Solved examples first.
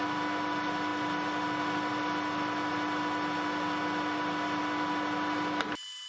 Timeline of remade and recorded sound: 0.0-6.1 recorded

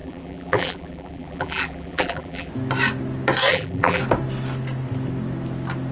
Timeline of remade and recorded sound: 0.0-2.5 remade; 2.5-3.5 recorded; 3.5-4.0 remade; 4.0-5.9 recorded

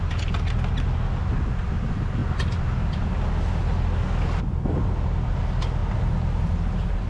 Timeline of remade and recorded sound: 0.0-7.1 recorded

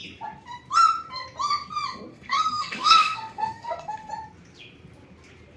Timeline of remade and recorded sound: 0.0-2.1 recorded; 2.1-4.1 remade; 4.1-5.6 recorded